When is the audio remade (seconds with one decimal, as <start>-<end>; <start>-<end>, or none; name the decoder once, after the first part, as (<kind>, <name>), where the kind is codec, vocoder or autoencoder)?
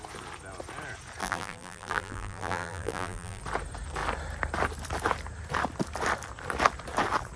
1.2-3.4 (vocoder, BigVGAN v2)